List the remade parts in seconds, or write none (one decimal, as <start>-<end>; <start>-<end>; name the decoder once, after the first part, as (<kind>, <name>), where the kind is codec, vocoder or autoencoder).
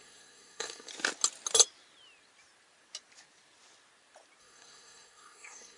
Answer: 0.0-0.9 (codec, SNAC); 4.4-5.8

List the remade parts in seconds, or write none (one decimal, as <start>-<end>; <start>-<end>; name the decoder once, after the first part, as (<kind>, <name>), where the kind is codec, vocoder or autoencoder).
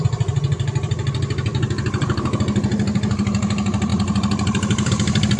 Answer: none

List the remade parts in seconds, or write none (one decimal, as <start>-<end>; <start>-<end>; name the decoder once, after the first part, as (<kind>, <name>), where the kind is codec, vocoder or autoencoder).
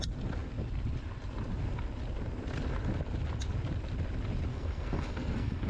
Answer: 4.5-5.7 (codec, SNAC)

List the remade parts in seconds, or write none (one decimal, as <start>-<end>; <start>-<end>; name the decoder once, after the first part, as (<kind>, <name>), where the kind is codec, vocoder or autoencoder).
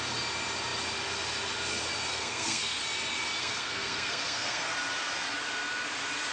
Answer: 2.1-2.8 (codec, SNAC); 3.4-4.7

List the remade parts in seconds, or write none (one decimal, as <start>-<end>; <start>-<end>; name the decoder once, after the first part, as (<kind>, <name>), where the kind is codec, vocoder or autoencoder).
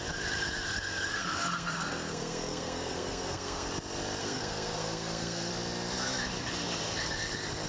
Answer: 1.1-3.7 (codec, SNAC); 4.2-5.5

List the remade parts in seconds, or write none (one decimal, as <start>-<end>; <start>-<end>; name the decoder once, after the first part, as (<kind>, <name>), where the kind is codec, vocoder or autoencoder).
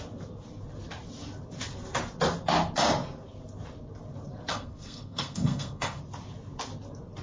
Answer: 4.5-6.0 (codec, SNAC)